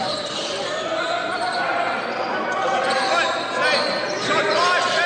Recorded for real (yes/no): yes